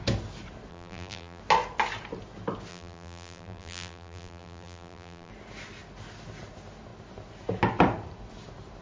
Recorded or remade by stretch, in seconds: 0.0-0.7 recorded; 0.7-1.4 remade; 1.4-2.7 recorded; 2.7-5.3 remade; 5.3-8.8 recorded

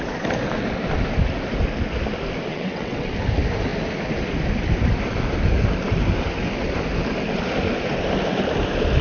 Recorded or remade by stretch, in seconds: 0.0-2.5 recorded; 2.5-3.1 remade; 3.1-9.0 recorded

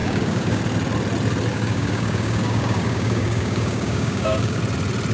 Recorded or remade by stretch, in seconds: 0.0-0.6 remade; 0.6-1.5 recorded; 1.5-4.6 remade; 4.6-5.1 recorded

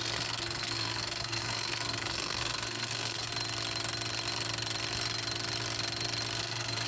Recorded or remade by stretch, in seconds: 0.0-3.3 remade; 3.3-6.4 recorded; 6.4-6.9 remade

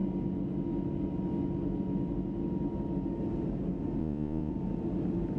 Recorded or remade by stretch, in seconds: 0.0-4.0 recorded; 4.0-4.5 remade; 4.5-5.4 recorded

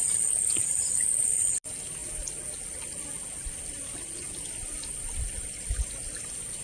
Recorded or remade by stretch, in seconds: 0.0-6.6 recorded